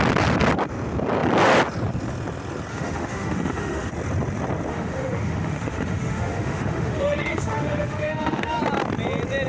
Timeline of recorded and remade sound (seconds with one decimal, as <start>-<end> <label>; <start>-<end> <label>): 0.0-2.7 recorded; 2.7-3.9 remade; 3.9-4.7 recorded; 4.7-8.6 remade; 8.6-9.5 recorded